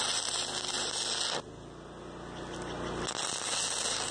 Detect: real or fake real